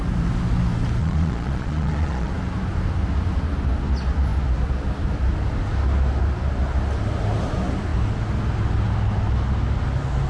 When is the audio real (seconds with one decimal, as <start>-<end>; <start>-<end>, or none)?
0.0-1.0; 2.3-10.3